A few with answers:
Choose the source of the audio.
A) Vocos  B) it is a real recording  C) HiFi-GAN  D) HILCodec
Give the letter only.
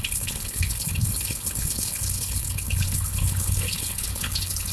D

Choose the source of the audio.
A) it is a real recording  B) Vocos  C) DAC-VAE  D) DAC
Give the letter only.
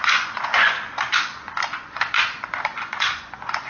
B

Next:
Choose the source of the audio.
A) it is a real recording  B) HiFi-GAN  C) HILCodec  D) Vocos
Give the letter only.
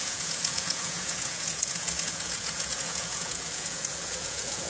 D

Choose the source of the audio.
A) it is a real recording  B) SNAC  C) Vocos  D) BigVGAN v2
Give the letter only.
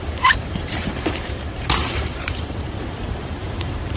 D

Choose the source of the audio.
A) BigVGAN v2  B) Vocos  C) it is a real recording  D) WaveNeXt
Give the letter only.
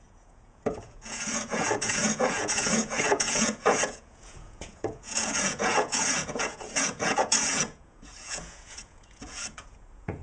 B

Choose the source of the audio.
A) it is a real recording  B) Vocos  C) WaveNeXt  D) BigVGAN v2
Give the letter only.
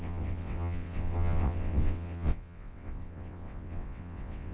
C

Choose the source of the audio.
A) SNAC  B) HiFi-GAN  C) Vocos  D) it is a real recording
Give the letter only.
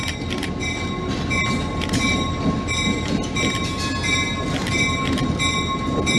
D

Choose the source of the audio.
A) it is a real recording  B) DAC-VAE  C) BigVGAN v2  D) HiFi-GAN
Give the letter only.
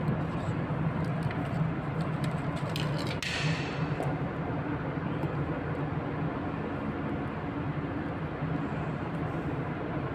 A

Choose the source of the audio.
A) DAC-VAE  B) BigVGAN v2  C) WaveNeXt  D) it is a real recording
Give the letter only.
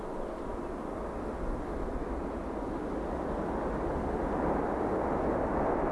D